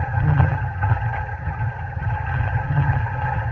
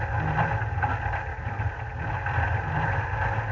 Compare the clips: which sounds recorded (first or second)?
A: second